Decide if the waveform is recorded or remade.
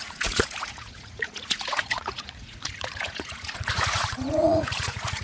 remade